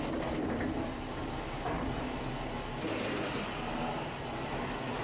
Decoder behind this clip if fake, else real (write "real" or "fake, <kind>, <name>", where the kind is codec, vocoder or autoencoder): real